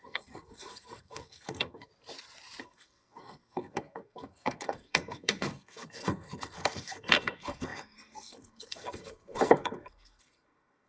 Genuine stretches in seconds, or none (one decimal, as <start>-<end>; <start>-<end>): 1.9-2.6